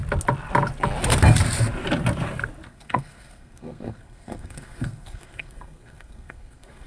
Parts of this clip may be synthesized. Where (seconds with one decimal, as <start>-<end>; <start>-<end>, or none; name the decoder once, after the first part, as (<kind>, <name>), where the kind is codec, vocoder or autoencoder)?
2.7-6.9 (codec, SNAC)